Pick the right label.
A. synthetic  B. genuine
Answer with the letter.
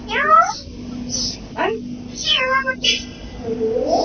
B